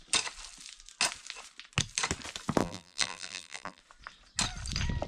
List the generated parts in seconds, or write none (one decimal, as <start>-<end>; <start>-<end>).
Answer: 2.6-3.8